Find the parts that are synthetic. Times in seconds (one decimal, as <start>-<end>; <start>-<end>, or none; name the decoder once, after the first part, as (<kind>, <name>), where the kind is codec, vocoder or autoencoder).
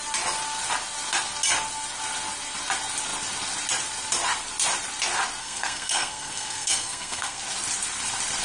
5.4-7.4 (codec, SNAC)